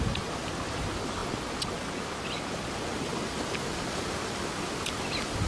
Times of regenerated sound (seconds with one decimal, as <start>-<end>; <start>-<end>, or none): none